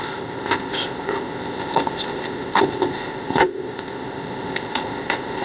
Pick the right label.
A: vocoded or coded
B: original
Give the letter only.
A